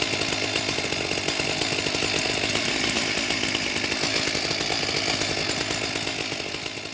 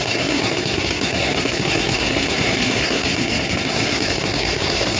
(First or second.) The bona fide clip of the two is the first